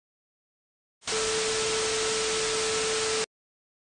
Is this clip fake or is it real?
real